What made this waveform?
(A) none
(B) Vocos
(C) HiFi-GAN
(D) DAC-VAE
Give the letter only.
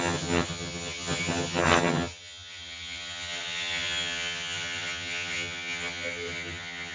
C